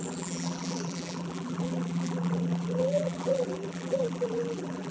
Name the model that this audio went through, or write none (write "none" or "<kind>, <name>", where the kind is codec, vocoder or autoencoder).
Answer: vocoder, BigVGAN v2